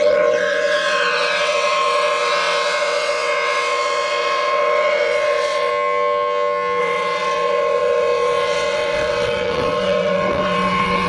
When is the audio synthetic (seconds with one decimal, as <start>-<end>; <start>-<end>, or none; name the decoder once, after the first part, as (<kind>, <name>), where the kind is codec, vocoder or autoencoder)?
0.0-5.7 (vocoder, WaveNeXt); 6.8-11.1